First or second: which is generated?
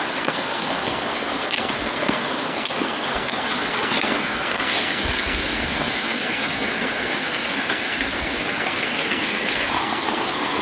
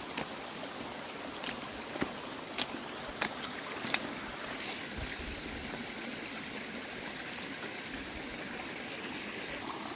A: first